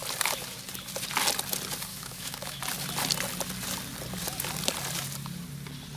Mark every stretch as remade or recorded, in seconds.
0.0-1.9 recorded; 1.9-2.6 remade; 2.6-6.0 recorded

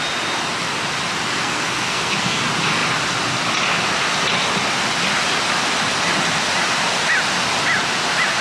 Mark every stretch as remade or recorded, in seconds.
0.0-1.4 recorded; 1.4-2.4 remade; 2.4-8.4 recorded